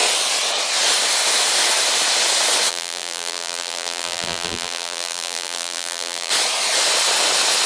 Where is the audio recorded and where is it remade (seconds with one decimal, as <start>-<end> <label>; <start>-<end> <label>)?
0.0-2.7 recorded; 2.7-6.3 remade; 6.3-7.7 recorded